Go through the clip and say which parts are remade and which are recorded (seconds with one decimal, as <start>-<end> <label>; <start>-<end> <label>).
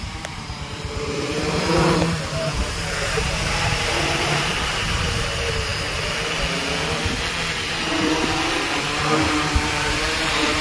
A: 0.0-5.7 remade; 5.7-9.0 recorded; 9.0-10.6 remade